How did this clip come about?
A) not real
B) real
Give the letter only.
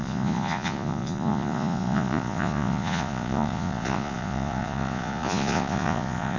A